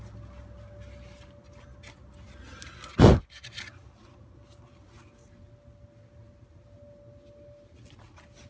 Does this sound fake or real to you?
real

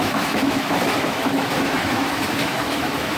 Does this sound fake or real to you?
fake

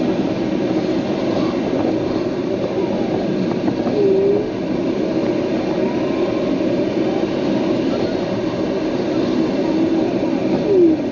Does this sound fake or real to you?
real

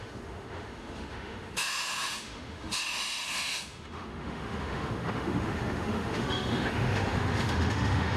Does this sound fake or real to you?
fake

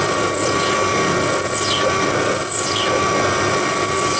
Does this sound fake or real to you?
real